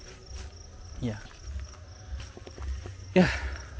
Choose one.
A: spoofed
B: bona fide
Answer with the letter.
B